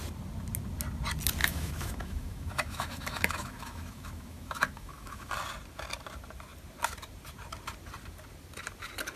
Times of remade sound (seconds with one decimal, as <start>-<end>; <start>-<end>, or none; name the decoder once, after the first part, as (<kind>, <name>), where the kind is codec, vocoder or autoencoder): 1.4-5.3 (autoencoder, DAC-VAE)